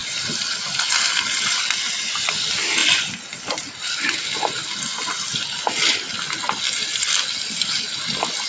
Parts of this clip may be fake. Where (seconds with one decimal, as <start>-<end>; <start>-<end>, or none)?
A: 0.0-0.6

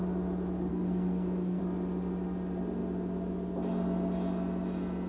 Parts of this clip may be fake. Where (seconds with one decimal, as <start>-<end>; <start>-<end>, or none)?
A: 0.7-1.6

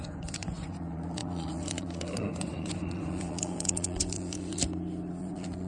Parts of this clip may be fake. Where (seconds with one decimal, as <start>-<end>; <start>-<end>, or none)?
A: 0.0-4.6; 5.2-5.7

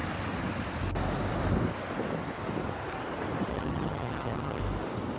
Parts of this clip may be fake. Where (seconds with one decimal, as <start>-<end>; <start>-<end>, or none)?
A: 3.5-4.6

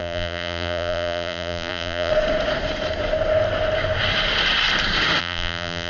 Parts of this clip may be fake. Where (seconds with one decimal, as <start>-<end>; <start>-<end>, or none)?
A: 0.0-2.1; 5.2-5.9

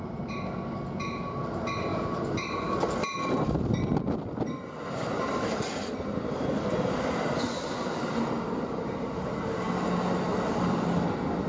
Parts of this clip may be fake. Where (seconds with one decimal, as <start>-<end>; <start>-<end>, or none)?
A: none

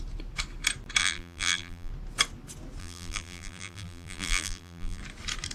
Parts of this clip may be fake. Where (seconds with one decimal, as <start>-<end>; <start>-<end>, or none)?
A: 1.0-1.9; 2.8-5.0

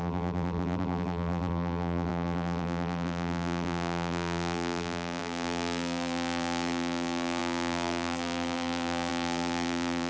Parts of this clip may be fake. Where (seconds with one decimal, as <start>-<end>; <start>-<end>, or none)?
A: 0.0-10.1